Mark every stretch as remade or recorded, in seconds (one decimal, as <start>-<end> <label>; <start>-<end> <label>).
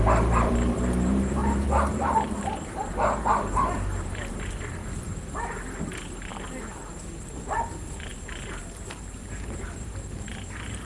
0.0-4.8 remade; 4.8-5.8 recorded; 5.8-6.3 remade; 6.3-7.7 recorded; 7.7-8.1 remade; 8.1-8.6 recorded; 8.6-10.8 remade